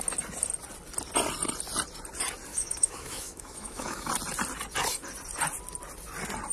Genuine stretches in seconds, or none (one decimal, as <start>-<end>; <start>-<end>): 0.0-2.5; 4.1-6.5